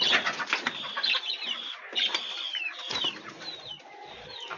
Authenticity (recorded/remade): recorded